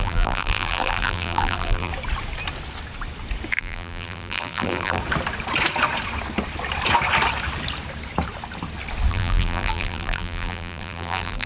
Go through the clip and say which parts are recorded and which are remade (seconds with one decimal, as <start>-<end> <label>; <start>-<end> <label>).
0.0-1.9 remade; 1.9-3.6 recorded; 3.6-5.0 remade; 5.0-9.1 recorded; 9.1-11.5 remade